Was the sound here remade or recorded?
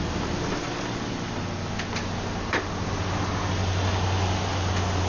recorded